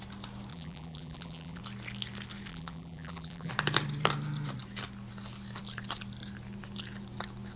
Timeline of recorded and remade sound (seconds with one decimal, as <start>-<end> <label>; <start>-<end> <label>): 0.0-0.5 recorded; 0.5-1.6 remade; 1.6-2.5 recorded; 2.5-3.5 remade; 3.5-7.6 recorded